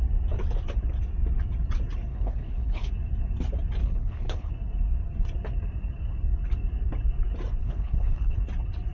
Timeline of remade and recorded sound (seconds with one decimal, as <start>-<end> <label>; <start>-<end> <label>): 0.0-2.1 recorded; 2.1-2.9 remade; 2.9-3.8 recorded; 3.8-4.5 remade; 4.5-7.6 recorded; 7.6-8.4 remade; 8.4-8.9 recorded